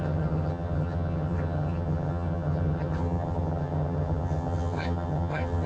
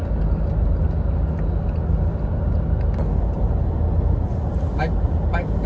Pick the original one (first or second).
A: second